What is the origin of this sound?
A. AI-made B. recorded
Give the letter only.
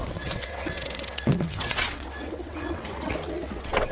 A